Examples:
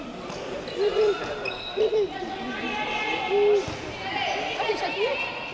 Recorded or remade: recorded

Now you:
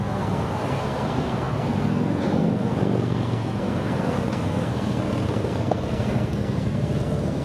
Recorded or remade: remade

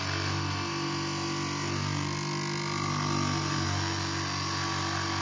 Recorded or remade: recorded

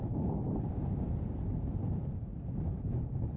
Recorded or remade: recorded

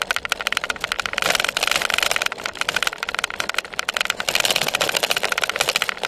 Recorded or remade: recorded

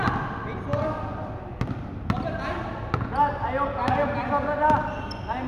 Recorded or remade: recorded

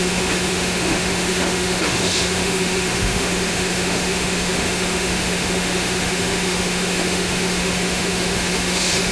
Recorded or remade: remade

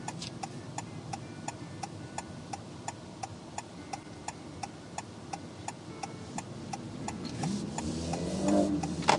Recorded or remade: remade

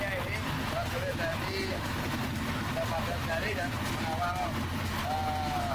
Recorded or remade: recorded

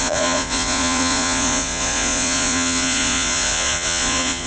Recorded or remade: remade